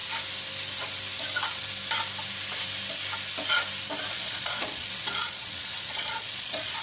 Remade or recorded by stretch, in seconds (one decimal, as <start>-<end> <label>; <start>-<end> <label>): 0.0-4.1 recorded; 4.1-6.8 remade